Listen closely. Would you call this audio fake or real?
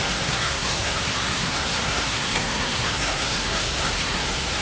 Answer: fake